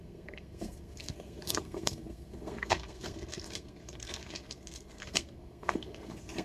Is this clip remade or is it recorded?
remade